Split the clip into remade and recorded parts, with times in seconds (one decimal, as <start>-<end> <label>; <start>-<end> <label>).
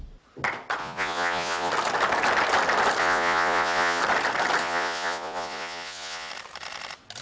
0.0-0.8 recorded; 0.8-1.7 remade; 1.7-3.0 recorded; 3.0-4.0 remade; 4.0-4.6 recorded; 4.6-6.3 remade; 6.3-7.2 recorded